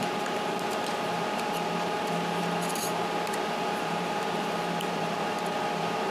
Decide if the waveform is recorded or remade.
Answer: remade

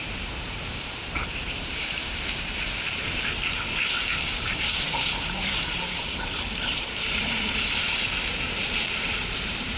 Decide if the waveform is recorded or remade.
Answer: remade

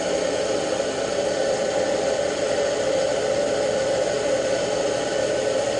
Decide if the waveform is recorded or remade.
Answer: recorded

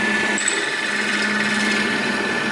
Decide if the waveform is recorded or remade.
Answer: recorded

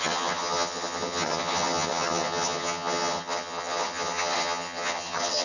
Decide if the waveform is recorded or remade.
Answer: remade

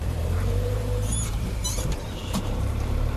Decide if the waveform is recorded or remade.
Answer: remade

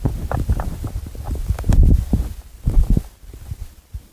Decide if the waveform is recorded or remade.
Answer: recorded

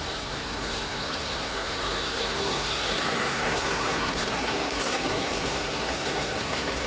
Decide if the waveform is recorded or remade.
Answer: remade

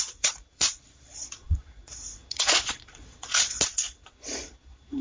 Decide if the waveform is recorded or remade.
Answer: remade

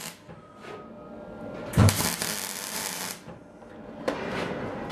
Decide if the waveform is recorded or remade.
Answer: remade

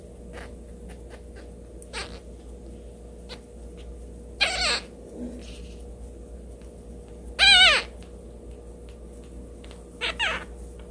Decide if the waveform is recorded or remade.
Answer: recorded